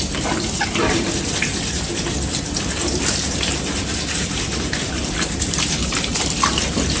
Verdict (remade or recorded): recorded